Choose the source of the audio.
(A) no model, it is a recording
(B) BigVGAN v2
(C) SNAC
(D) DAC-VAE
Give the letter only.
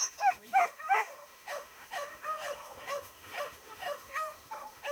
D